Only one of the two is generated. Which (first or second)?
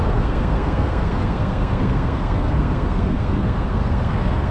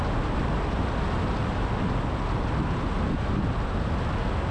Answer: first